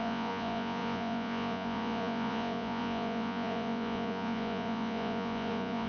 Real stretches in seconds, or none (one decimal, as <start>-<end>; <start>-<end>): none